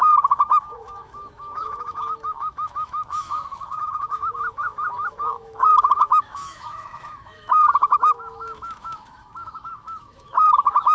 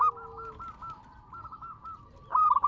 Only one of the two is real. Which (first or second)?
second